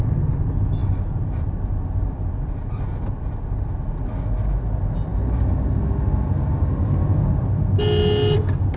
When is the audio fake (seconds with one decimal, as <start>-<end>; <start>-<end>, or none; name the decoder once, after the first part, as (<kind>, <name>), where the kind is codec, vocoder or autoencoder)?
none